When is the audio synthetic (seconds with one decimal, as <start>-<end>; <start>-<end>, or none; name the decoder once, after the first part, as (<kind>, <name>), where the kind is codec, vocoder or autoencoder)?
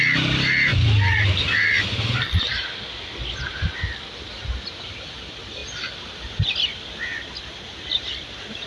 none